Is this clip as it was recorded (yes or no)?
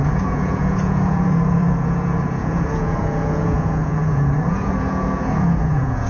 no